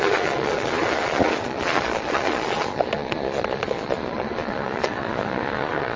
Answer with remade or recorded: remade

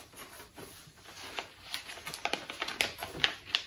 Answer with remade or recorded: recorded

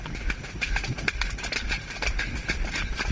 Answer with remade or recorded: recorded